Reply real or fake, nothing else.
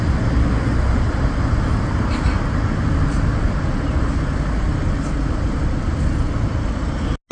real